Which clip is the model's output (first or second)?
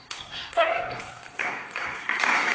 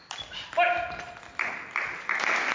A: first